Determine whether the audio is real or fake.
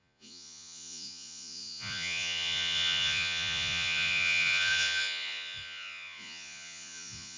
fake